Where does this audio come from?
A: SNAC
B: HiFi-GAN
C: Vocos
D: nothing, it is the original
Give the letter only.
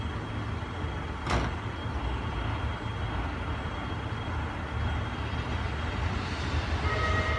D